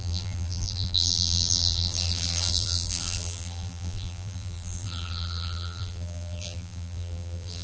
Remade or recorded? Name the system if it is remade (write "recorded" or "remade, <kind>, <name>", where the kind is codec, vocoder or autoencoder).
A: remade, vocoder, BigVGAN v2